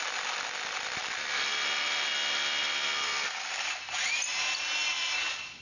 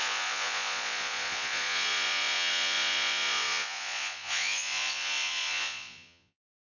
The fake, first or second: second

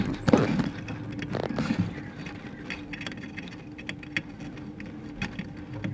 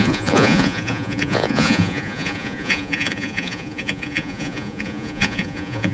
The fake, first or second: second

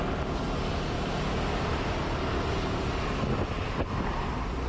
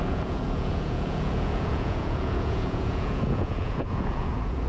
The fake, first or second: second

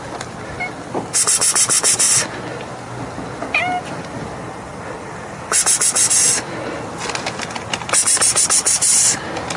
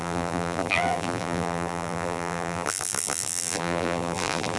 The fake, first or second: second